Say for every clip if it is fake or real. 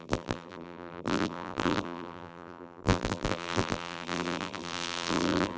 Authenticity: fake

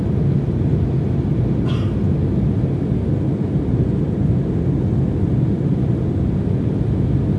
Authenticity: real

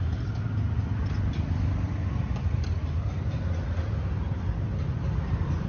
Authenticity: real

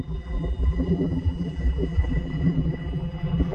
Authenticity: fake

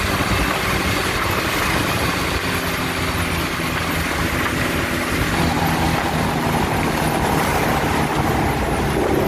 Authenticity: real